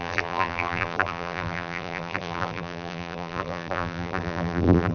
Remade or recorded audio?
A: remade